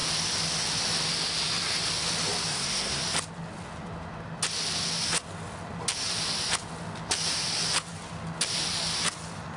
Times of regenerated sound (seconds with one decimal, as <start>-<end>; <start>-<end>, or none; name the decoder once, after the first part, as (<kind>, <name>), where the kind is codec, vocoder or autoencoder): 2.5-3.0 (codec, SNAC)